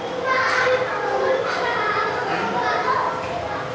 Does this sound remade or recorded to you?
recorded